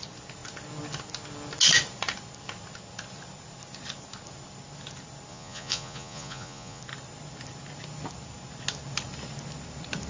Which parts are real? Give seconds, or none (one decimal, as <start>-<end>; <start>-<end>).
0.0-5.3; 6.8-10.1